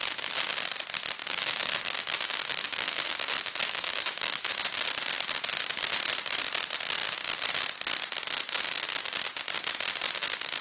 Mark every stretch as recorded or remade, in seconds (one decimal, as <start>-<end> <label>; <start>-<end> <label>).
0.0-1.2 recorded; 1.2-4.5 remade; 4.5-10.6 recorded

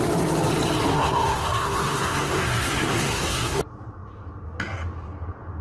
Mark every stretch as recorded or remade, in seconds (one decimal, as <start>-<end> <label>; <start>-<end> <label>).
0.0-0.9 recorded; 0.9-3.6 remade; 3.6-5.6 recorded

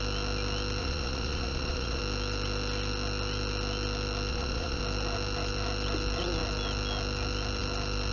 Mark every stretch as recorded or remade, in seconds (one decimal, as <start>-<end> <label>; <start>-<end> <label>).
0.0-0.8 recorded; 0.8-2.0 remade; 2.0-4.3 recorded; 4.3-4.8 remade; 4.8-8.1 recorded

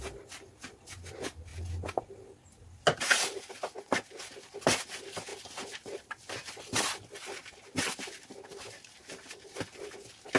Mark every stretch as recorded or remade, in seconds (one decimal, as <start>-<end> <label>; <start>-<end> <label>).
0.0-10.4 recorded

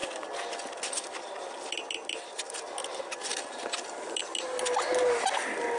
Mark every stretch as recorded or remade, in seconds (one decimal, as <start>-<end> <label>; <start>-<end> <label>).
0.0-5.8 recorded